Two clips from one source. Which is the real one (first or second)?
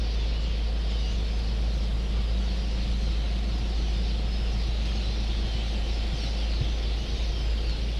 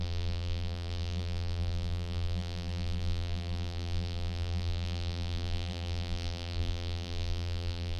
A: first